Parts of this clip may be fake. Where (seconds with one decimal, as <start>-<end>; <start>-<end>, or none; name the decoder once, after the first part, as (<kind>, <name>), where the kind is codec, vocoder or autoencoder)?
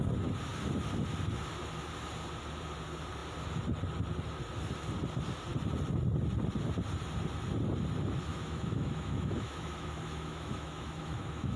8.3-11.6 (autoencoder, DAC-VAE)